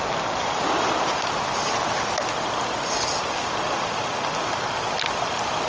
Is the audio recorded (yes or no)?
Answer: yes